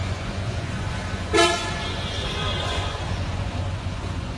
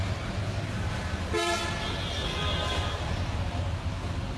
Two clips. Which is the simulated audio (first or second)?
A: first